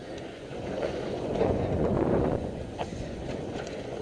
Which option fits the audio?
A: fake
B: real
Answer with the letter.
A